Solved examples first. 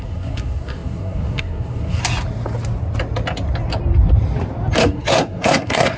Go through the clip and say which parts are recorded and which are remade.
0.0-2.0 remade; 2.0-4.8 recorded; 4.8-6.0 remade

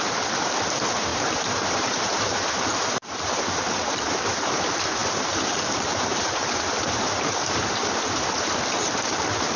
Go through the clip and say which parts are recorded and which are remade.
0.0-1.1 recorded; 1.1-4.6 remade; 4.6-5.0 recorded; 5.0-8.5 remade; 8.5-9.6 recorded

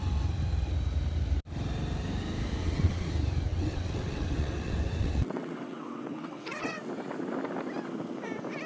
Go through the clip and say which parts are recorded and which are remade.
0.0-2.6 recorded; 2.6-3.1 remade; 3.1-3.5 recorded; 3.5-6.9 remade; 6.9-8.7 recorded